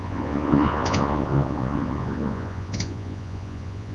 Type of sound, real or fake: fake